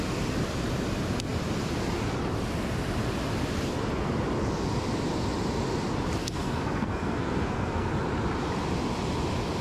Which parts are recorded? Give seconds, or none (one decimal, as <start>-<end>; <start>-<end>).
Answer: 0.0-6.2; 7.9-9.6